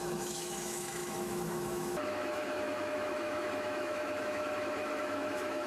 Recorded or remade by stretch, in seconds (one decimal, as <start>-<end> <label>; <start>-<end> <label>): 0.0-5.7 remade